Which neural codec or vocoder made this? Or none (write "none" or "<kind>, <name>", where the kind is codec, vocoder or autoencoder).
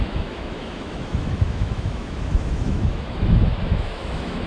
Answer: autoencoder, DAC-VAE